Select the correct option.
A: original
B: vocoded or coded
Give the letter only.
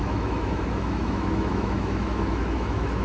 B